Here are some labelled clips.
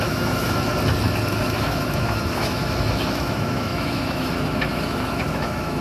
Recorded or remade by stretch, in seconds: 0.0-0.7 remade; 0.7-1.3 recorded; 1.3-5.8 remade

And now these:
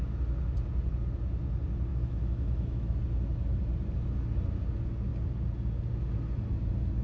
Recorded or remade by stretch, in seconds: 0.0-1.9 recorded; 1.9-3.0 remade; 3.0-7.0 recorded